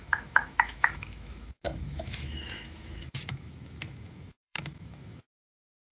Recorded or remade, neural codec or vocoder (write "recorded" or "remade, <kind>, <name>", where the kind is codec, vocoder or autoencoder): remade, autoencoder, DAC-VAE